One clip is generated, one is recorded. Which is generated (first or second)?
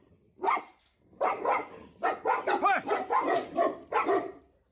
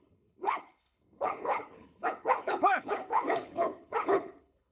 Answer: second